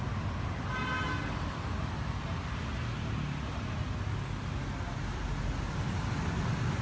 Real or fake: real